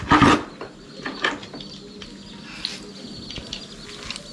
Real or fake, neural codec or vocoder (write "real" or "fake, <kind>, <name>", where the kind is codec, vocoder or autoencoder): real